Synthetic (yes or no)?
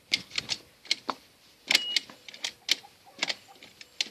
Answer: no